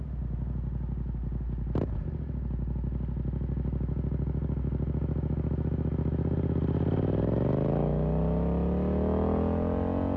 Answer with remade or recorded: recorded